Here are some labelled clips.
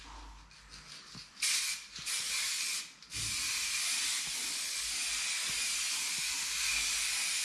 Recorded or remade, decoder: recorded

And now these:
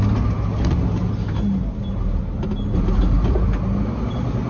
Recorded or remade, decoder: recorded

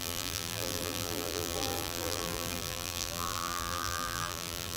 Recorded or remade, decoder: remade, vocoder, BigVGAN v2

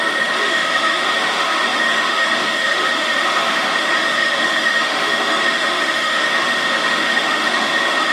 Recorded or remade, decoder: remade, autoencoder, DAC-VAE